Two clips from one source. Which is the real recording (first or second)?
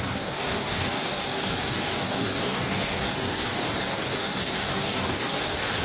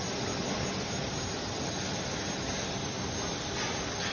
second